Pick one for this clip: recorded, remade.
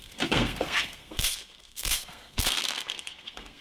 remade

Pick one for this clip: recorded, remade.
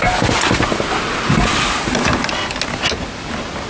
recorded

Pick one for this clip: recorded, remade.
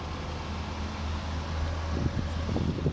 recorded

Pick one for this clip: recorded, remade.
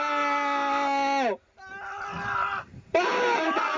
recorded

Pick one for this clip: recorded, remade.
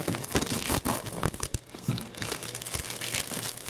remade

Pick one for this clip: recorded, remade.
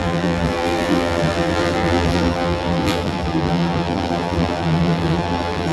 remade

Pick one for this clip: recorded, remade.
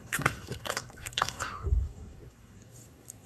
remade